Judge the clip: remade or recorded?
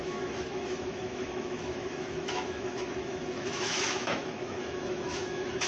remade